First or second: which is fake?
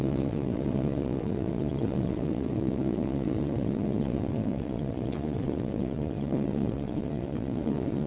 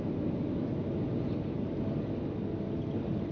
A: first